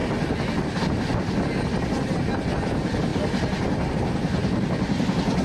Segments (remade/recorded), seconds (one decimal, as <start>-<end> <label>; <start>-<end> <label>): 0.0-5.4 recorded